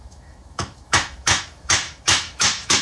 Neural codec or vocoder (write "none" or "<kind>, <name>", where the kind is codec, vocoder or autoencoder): autoencoder, DAC-VAE